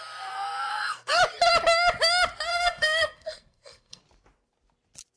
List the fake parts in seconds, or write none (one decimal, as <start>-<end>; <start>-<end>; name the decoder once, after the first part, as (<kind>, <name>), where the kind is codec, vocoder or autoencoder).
0.7-1.2 (codec, SNAC); 2.5-4.0